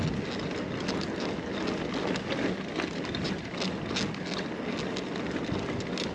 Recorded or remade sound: recorded